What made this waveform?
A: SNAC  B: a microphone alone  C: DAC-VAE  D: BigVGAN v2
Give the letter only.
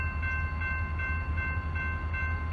B